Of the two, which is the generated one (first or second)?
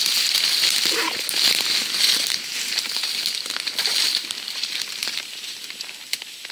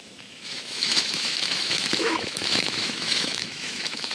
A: second